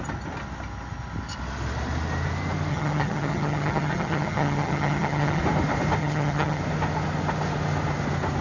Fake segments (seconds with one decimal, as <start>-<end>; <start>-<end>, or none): 2.7-5.4; 6.0-6.6